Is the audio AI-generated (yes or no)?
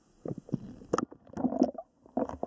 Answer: no